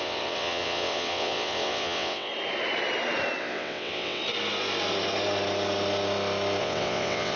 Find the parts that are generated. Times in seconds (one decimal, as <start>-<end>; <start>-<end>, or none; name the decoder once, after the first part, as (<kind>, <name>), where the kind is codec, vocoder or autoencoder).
0.0-2.3 (vocoder, WaveNeXt); 3.4-4.2; 6.6-7.4